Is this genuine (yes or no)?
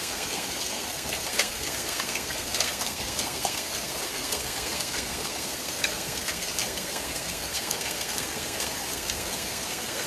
no